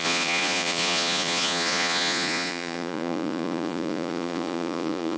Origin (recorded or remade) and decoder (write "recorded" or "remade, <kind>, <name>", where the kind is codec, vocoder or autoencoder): remade, vocoder, Vocos